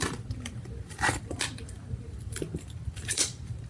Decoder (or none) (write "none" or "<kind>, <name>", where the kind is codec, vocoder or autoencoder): vocoder, BigVGAN v2